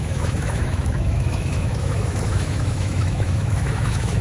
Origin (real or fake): fake